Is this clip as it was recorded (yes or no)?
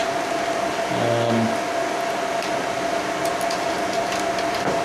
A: yes